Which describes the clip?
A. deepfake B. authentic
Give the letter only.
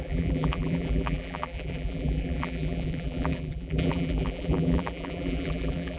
A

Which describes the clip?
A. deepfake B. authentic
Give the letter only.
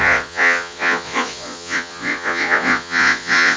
A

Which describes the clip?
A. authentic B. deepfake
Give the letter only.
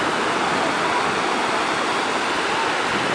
A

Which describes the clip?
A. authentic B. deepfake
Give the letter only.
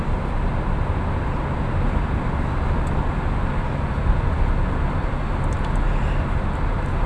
A